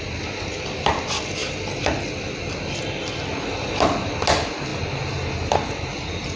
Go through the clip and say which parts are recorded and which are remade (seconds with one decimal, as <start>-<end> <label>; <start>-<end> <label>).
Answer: 0.0-6.4 recorded